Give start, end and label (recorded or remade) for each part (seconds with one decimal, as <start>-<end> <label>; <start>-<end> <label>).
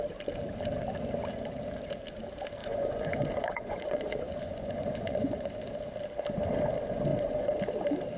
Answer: 0.0-2.6 recorded; 2.6-5.6 remade; 5.6-7.1 recorded; 7.1-7.6 remade; 7.6-8.2 recorded